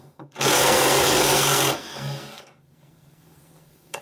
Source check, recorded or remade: remade